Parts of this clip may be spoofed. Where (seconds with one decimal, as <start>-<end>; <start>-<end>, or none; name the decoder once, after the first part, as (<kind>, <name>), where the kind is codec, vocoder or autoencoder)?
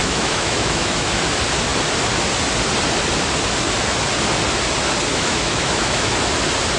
0.0-1.2 (autoencoder, DAC-VAE); 5.1-6.2